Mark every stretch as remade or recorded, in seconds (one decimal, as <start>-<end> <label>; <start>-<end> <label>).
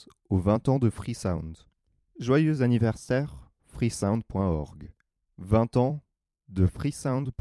0.0-2.1 remade; 2.1-4.4 recorded; 4.4-7.4 remade